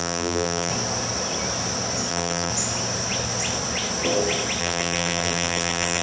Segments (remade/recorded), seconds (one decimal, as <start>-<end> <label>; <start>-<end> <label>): 0.0-0.7 remade; 0.7-2.1 recorded; 2.1-2.5 remade; 2.5-4.6 recorded; 4.6-6.0 remade